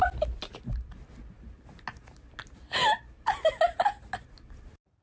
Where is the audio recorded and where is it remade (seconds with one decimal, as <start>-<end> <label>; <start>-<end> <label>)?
0.0-5.0 recorded